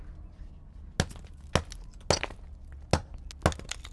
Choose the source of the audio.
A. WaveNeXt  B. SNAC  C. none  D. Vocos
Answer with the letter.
C